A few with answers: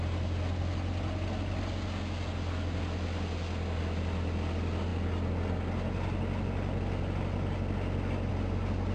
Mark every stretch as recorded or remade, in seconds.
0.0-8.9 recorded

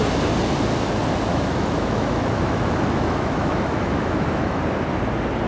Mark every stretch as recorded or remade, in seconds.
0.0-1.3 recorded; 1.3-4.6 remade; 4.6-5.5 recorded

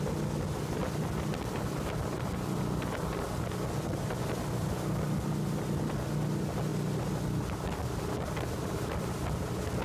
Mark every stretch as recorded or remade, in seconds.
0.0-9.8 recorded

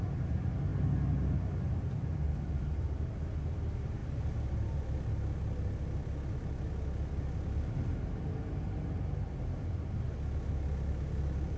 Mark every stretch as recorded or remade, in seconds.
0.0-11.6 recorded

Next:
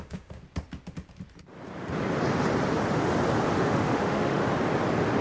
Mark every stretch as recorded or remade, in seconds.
0.0-0.4 remade; 0.4-3.5 recorded; 3.5-4.4 remade; 4.4-5.2 recorded

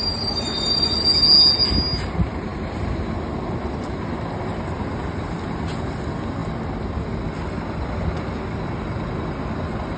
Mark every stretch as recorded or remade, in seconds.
0.0-10.0 recorded

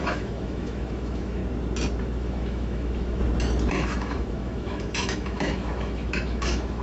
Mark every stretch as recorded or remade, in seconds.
0.0-1.4 remade; 1.4-2.0 recorded; 2.0-3.2 remade; 3.2-3.7 recorded; 3.7-6.8 remade

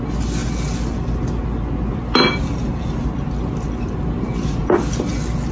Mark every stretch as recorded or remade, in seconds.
0.0-5.5 recorded